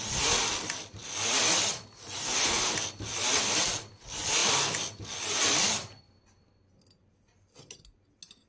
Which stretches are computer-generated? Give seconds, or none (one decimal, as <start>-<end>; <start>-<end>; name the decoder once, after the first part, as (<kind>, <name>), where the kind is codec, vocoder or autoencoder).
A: none